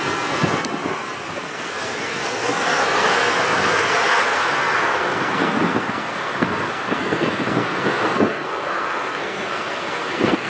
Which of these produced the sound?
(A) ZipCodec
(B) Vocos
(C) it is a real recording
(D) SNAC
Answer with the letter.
D